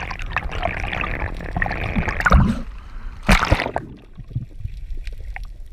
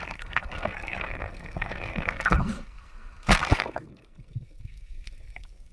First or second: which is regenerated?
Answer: second